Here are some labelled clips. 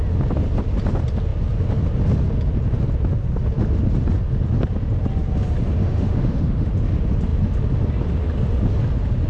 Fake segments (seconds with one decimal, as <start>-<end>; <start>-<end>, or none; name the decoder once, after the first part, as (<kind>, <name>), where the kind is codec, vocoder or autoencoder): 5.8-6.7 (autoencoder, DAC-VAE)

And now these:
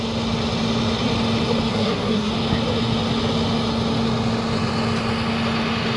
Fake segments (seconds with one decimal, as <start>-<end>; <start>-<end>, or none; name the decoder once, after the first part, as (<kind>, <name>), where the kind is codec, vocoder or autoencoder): 1.7-2.3 (codec, SNAC)

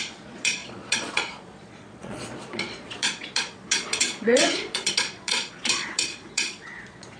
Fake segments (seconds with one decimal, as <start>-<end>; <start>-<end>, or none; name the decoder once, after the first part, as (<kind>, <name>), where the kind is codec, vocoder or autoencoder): 0.0-7.2 (vocoder, Vocos)

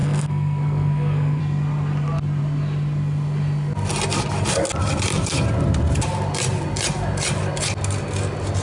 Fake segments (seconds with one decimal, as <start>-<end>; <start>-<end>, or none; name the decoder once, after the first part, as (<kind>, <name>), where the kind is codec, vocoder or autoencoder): 0.0-1.4 (codec, SNAC)

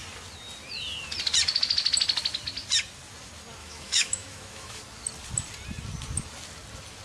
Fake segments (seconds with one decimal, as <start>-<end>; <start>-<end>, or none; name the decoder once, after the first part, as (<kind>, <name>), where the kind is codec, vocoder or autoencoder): 3.6-4.8 (autoencoder, DAC-VAE)

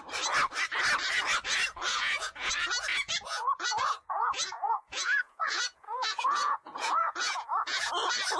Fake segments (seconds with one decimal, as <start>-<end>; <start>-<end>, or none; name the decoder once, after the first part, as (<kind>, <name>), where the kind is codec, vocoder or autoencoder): 1.9-2.5 (vocoder, Vocos); 2.9-7.9